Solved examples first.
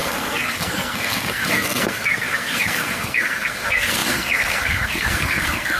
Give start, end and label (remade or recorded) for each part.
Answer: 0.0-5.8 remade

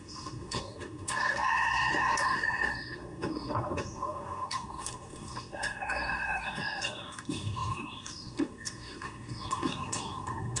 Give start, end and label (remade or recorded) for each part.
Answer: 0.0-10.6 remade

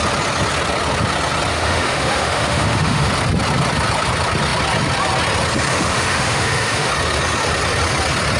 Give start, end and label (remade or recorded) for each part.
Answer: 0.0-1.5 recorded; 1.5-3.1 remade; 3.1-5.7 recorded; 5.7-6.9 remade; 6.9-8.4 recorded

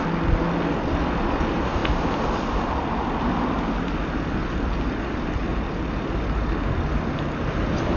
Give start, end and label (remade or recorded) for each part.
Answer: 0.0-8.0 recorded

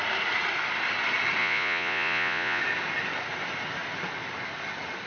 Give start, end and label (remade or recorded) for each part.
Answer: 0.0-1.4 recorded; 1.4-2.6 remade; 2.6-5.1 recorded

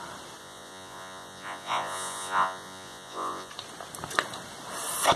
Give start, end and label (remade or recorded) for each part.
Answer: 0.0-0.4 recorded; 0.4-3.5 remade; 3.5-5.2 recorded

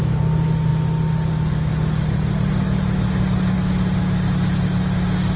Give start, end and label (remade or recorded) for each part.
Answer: 0.0-5.4 recorded

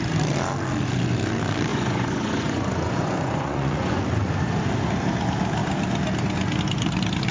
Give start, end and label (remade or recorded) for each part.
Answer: 0.0-1.7 recorded; 1.7-4.0 remade; 4.0-7.3 recorded